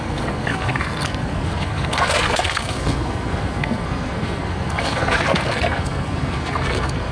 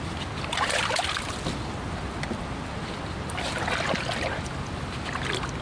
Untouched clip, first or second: second